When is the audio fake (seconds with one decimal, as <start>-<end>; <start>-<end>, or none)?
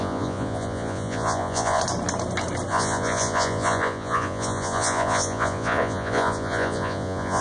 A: 0.0-1.8; 2.7-7.4